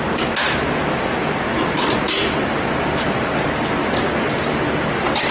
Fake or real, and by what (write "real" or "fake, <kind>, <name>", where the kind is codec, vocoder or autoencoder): real